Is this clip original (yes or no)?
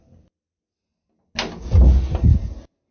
yes